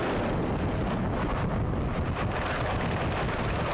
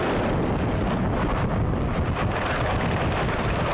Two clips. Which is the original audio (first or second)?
first